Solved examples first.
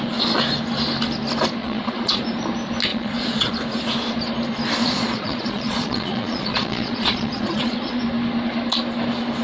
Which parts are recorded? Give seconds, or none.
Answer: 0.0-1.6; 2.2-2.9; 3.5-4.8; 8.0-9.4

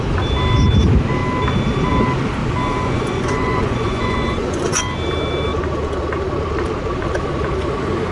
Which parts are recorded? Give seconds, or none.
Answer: 0.0-2.4; 4.8-8.1